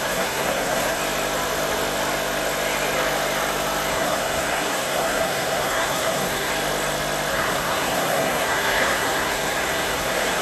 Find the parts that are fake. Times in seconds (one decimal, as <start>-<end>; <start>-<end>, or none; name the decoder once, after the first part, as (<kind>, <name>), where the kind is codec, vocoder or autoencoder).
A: 0.0-1.0 (codec, SNAC); 3.9-6.5; 7.3-10.4